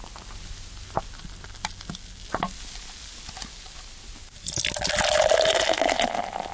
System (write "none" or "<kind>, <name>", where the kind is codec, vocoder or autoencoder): none